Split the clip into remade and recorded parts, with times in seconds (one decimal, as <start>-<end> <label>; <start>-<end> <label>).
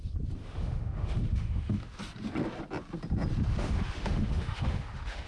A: 0.0-0.4 recorded; 0.4-2.0 remade; 2.0-3.5 recorded; 3.5-5.3 remade